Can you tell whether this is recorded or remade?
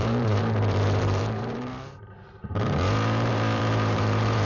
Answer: remade